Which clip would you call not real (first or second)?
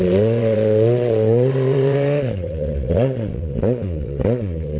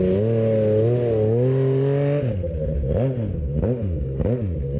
first